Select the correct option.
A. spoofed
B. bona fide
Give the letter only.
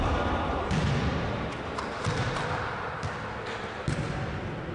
B